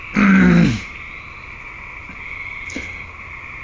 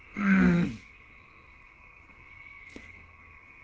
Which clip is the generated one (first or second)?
second